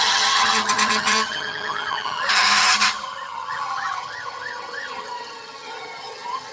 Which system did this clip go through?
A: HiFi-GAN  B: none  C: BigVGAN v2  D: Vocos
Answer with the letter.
A